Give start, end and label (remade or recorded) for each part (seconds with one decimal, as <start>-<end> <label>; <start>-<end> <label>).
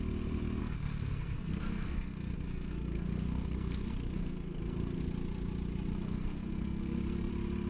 0.0-0.6 recorded; 0.6-5.0 remade; 5.0-5.9 recorded; 5.9-7.3 remade; 7.3-7.7 recorded